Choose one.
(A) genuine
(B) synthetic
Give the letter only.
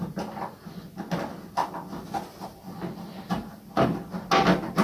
A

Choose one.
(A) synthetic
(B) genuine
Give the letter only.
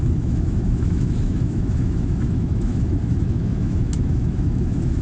A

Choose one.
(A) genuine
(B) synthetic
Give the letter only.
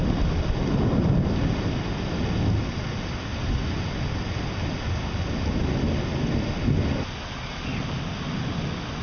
A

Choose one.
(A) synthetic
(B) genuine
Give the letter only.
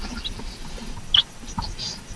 B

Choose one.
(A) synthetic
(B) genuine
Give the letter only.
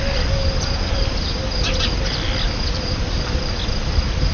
B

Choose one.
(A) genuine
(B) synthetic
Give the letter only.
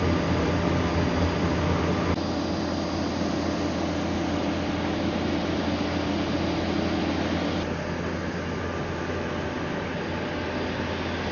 A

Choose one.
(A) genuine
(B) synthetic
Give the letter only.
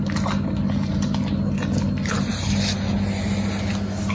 A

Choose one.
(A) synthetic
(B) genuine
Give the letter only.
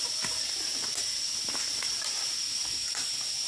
B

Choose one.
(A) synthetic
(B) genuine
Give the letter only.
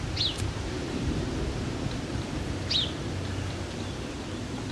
B